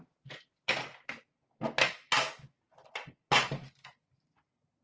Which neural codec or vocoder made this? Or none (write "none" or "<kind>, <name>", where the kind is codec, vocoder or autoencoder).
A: none